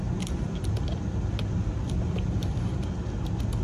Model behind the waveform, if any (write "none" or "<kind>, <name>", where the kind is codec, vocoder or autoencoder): none